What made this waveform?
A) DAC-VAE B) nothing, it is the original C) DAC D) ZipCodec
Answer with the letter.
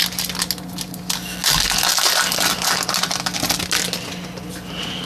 B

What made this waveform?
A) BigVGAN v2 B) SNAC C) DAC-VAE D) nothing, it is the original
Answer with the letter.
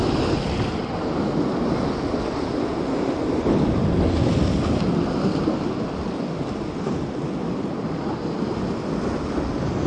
D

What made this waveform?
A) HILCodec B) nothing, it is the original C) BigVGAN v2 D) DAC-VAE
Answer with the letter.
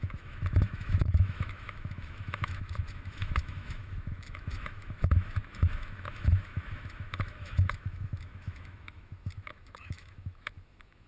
D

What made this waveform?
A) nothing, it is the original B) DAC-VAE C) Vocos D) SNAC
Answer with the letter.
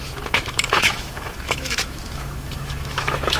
B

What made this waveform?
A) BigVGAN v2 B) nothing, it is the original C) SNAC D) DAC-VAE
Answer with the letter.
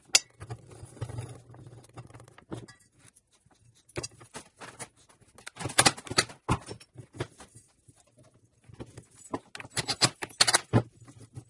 B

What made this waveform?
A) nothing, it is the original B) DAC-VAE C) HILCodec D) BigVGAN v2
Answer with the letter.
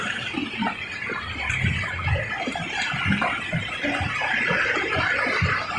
A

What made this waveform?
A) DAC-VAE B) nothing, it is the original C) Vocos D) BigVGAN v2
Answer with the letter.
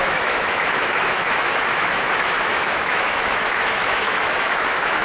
A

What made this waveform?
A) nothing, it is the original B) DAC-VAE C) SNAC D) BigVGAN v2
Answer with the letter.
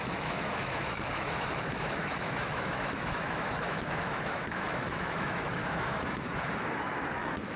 B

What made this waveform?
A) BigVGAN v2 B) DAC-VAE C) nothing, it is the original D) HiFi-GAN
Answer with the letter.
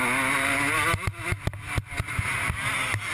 C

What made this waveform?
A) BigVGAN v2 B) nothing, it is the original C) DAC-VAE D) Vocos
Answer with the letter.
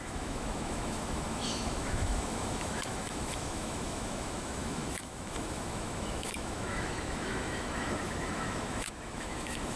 C